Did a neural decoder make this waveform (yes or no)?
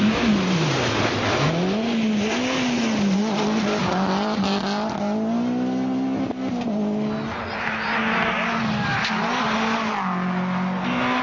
no